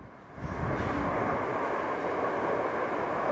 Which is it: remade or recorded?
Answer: recorded